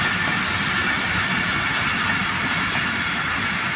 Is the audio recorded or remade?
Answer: recorded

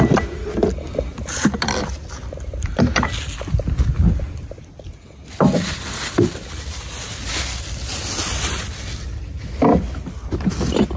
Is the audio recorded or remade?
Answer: recorded